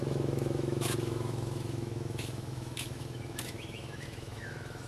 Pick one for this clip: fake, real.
fake